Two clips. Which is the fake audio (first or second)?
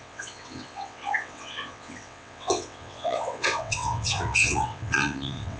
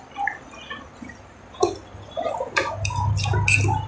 first